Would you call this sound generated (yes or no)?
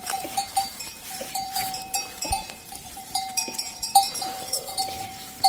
yes